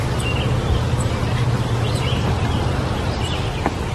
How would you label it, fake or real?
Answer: fake